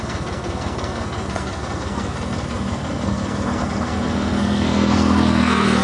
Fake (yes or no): yes